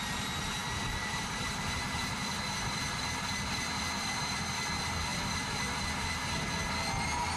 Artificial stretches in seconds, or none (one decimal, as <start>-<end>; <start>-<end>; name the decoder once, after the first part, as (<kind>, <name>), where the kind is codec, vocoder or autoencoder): 0.6-4.1 (vocoder, BigVGAN v2); 5.1-5.9